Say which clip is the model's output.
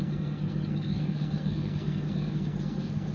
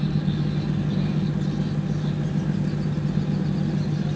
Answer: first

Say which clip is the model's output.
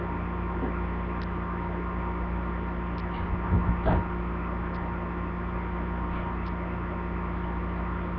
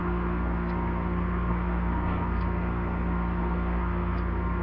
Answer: second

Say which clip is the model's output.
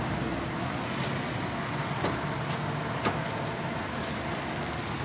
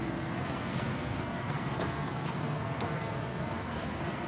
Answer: second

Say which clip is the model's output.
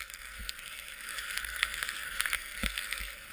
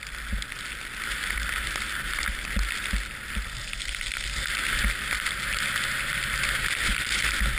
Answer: first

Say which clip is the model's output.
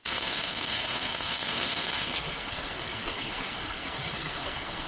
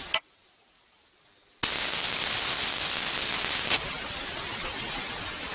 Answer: first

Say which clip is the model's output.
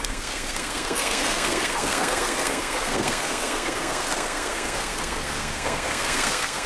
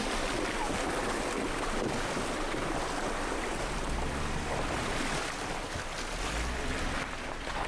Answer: first